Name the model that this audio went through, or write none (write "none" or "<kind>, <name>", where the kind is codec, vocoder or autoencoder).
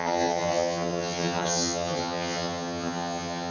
vocoder, HiFi-GAN